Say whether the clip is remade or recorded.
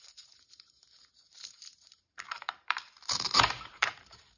remade